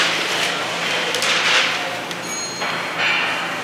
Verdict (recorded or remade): recorded